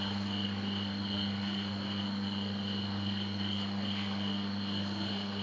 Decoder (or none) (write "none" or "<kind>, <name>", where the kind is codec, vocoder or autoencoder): codec, SNAC